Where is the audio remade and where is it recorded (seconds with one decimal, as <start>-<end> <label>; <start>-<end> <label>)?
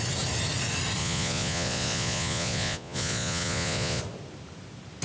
0.0-1.0 recorded; 1.0-4.0 remade; 4.0-5.0 recorded